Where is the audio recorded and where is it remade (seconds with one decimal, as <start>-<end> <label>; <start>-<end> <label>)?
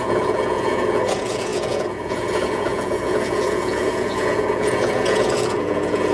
0.0-6.1 remade